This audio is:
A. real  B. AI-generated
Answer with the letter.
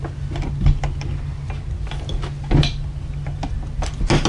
A